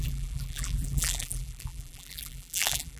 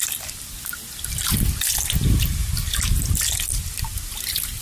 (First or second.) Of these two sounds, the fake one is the first